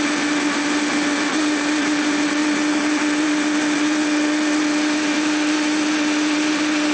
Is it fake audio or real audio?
real